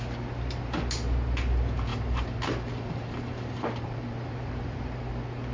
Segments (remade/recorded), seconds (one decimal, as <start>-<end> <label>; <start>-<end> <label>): 0.0-1.9 recorded; 1.9-5.0 remade; 5.0-5.5 recorded